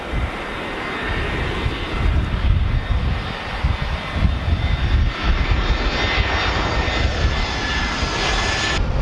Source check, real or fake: real